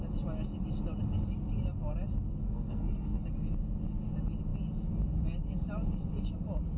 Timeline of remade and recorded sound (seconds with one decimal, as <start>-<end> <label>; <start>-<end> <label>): 0.0-2.4 recorded; 2.4-3.2 remade; 3.2-6.8 recorded